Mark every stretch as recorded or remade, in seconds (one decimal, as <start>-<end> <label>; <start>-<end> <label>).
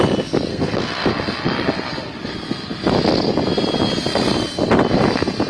0.0-0.5 recorded; 0.5-1.1 remade; 1.1-5.5 recorded